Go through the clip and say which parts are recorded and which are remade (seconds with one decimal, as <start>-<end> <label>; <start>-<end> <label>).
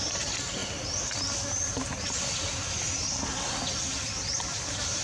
0.0-4.5 recorded; 4.5-5.0 remade